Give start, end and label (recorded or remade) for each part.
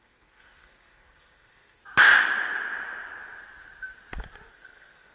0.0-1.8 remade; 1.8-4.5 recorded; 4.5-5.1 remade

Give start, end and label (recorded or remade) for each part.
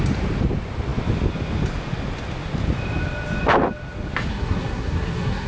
0.0-4.3 recorded; 4.3-5.5 remade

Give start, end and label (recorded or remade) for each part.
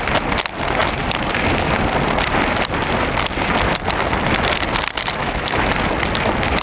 0.0-5.2 recorded; 5.2-5.7 remade; 5.7-6.6 recorded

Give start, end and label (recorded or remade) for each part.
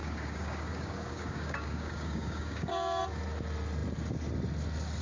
0.0-3.0 remade; 3.0-5.0 recorded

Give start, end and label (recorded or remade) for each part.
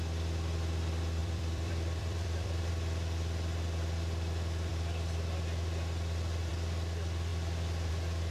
0.0-1.2 recorded; 1.2-2.7 remade; 2.7-8.3 recorded